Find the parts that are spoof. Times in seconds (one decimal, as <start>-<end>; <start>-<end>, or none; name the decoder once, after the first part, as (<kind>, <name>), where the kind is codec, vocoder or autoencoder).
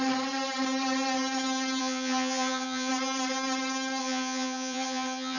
1.8-2.9 (vocoder, HiFi-GAN); 4.0-5.4